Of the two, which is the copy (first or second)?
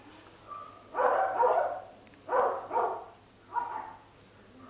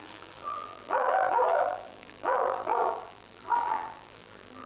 second